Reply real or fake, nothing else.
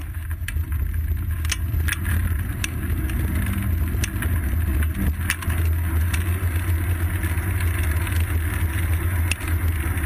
real